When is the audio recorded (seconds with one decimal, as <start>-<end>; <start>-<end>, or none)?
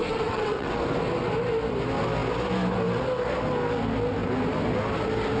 0.8-5.4